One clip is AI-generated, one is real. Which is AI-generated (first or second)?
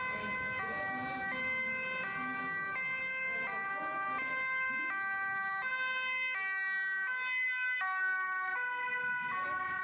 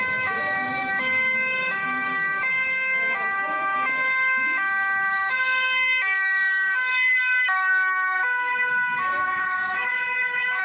second